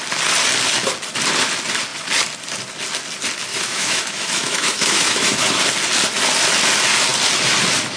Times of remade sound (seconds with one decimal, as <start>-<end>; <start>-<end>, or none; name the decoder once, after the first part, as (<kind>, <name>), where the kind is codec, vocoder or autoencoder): 3.5-5.6 (autoencoder, DAC-VAE)